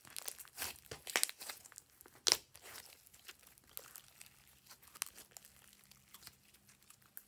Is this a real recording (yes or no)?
yes